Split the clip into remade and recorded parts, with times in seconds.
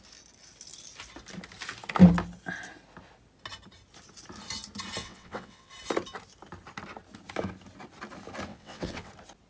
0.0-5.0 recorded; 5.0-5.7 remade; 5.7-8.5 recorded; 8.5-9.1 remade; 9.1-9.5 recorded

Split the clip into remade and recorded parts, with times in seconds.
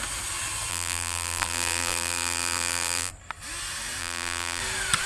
0.0-0.7 recorded; 0.7-3.1 remade; 3.1-4.0 recorded; 4.0-4.6 remade; 4.6-5.1 recorded